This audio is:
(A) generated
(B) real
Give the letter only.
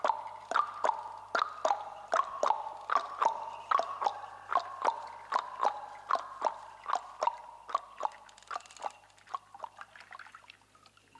B